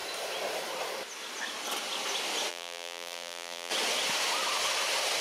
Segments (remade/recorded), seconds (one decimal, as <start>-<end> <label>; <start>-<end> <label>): 0.0-2.5 recorded; 2.5-3.7 remade; 3.7-5.2 recorded